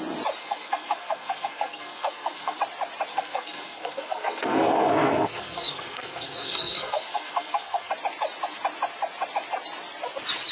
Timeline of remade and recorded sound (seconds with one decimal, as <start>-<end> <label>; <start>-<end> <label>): 0.0-0.4 recorded; 0.4-2.6 remade; 2.6-3.1 recorded; 3.1-7.9 remade; 7.9-10.5 recorded